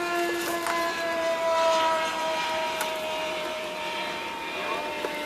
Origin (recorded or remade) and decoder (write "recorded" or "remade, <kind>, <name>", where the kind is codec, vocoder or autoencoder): remade, vocoder, BigVGAN v2